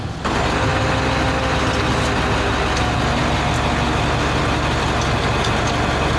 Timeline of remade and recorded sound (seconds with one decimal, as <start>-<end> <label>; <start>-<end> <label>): 0.0-6.2 recorded